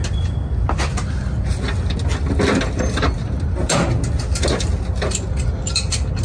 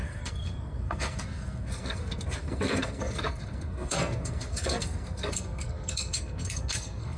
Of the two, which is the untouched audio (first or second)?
first